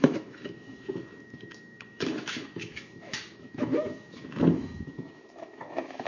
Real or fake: fake